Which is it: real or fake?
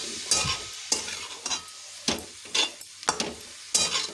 real